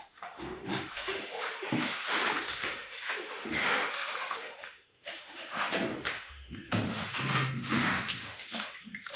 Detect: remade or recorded remade